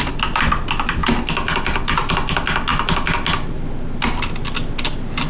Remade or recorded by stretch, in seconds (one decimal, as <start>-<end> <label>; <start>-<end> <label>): 0.0-5.3 recorded